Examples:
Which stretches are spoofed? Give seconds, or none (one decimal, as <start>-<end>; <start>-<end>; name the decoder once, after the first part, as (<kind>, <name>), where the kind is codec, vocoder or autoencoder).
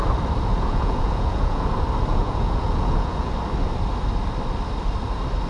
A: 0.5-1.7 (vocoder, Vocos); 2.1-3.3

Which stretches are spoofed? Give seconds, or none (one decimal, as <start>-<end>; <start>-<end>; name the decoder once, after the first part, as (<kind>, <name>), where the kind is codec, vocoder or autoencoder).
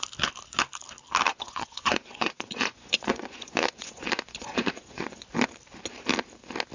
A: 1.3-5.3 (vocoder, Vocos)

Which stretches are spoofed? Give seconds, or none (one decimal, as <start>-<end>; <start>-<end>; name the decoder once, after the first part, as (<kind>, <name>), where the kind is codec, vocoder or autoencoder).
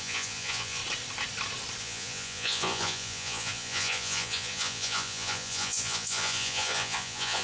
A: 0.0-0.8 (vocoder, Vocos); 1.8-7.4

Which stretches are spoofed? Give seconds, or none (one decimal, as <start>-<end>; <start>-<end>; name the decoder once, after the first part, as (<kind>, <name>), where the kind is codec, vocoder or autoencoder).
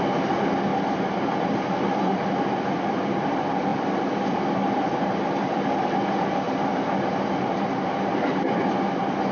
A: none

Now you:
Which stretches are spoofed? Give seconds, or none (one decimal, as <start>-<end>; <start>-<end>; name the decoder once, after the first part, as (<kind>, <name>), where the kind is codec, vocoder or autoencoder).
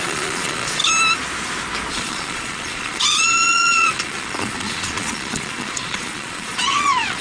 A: 0.0-0.8 (vocoder, Vocos); 1.9-7.2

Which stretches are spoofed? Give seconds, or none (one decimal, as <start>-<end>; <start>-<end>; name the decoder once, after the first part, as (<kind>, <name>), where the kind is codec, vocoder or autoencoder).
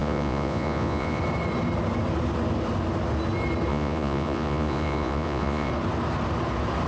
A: 0.0-1.2 (vocoder, Vocos); 3.7-5.7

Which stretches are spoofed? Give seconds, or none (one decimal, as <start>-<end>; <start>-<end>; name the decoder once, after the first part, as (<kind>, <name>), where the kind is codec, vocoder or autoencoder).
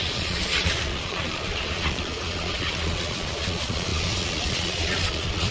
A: 0.0-5.5 (vocoder, Vocos)